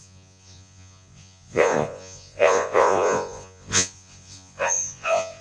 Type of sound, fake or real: fake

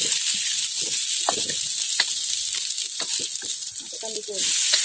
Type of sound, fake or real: real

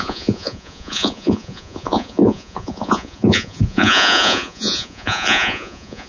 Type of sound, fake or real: fake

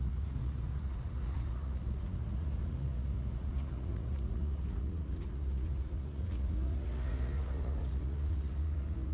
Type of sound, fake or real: fake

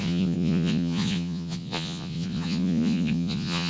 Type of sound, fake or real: fake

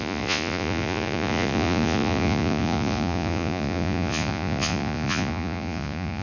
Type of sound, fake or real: fake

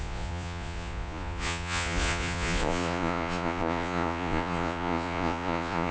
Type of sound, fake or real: fake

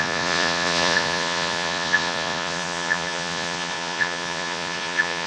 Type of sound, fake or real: fake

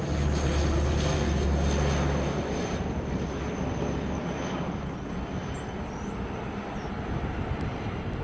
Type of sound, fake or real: real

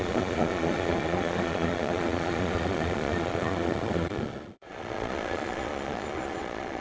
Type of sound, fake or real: fake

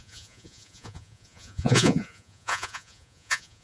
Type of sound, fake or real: fake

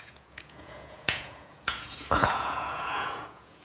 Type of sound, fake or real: fake